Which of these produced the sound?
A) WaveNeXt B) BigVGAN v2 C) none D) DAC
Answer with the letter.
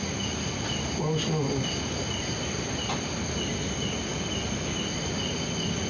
C